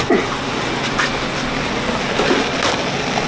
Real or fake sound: real